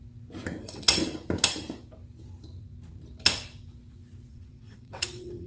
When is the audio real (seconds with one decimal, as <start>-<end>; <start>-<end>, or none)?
0.0-0.6; 1.0-4.3

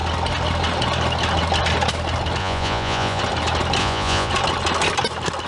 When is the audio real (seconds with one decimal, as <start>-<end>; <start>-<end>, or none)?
0.0-2.4; 3.2-3.8; 4.3-5.5